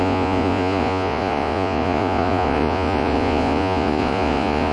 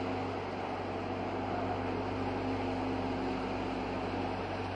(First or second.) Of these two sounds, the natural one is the second